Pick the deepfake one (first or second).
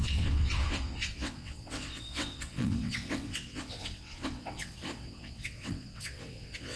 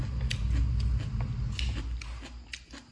first